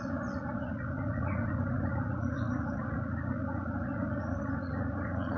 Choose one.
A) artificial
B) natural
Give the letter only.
A